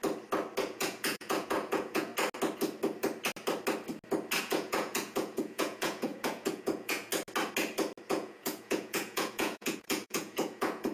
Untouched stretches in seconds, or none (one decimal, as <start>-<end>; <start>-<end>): 0.0-0.6; 2.1-4.4; 7.1-8.1